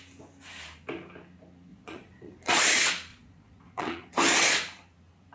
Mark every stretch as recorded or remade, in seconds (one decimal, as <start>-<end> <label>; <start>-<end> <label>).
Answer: 0.0-1.7 recorded; 1.7-2.6 remade; 2.6-3.1 recorded; 3.1-4.1 remade; 4.1-5.3 recorded